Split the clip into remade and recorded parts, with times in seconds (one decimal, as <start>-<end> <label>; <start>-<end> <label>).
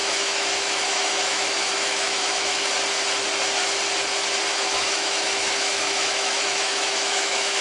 0.0-2.7 remade; 2.7-4.5 recorded; 4.5-7.6 remade